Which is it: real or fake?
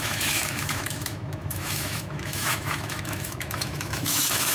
fake